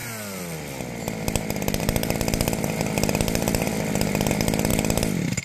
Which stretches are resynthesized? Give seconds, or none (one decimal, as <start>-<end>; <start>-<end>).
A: 3.5-4.3; 4.7-5.4